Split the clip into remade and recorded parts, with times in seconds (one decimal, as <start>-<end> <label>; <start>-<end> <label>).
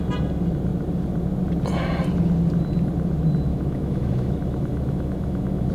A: 0.0-3.5 recorded; 3.5-5.7 remade